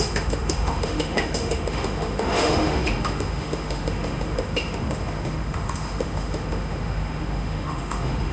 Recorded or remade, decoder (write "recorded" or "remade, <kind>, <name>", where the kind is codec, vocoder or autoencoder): remade, autoencoder, DAC-VAE